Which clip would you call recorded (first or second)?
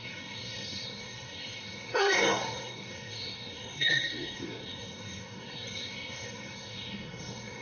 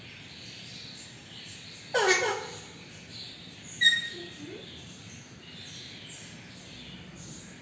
second